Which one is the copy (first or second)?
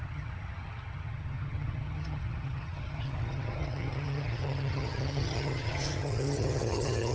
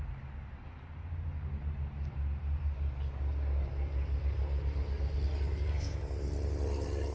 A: first